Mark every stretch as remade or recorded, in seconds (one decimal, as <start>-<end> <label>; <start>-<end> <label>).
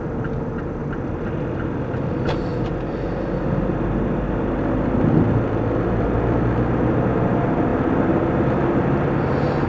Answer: 0.0-9.7 recorded